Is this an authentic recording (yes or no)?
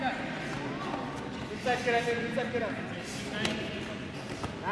yes